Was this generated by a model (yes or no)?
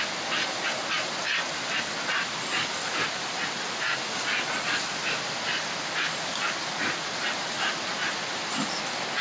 no